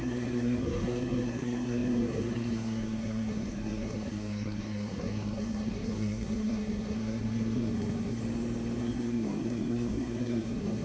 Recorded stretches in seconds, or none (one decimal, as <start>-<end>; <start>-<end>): 8.2-8.8